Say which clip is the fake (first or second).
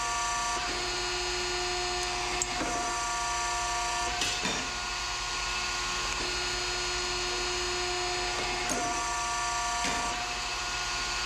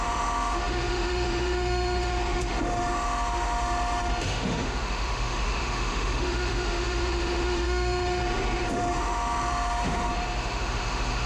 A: second